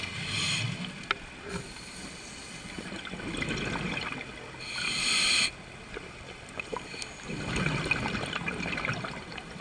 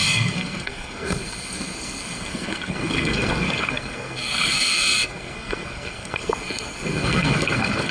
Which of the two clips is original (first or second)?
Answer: first